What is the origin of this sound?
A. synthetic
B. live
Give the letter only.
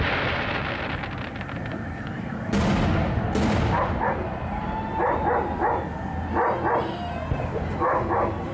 B